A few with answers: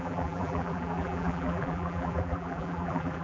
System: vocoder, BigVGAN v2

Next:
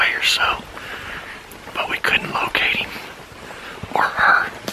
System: none